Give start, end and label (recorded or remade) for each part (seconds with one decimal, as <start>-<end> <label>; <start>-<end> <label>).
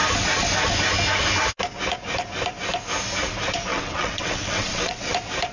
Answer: 0.0-3.7 recorded; 3.7-5.1 remade; 5.1-5.5 recorded